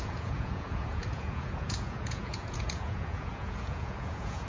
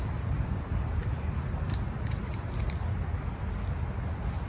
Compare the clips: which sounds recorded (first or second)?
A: second